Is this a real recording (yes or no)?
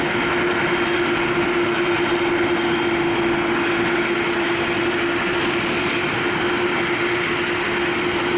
yes